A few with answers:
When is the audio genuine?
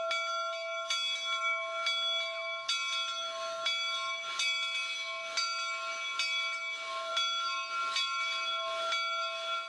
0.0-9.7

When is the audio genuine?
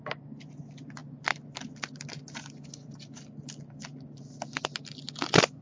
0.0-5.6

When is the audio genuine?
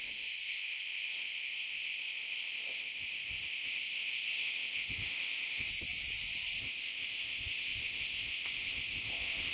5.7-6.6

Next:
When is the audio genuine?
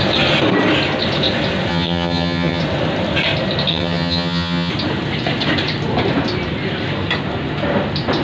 0.0-1.7; 2.6-3.7; 4.7-8.2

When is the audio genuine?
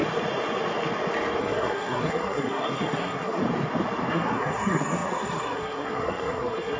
0.0-1.4; 3.4-4.1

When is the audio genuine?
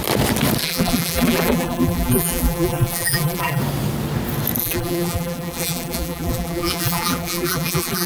0.0-0.6; 3.6-4.6